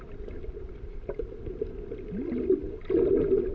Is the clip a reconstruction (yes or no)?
no